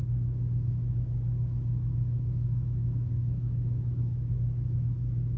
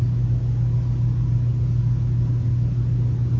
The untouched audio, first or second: second